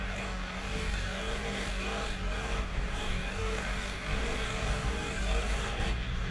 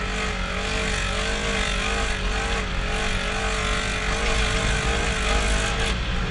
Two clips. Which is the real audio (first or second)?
second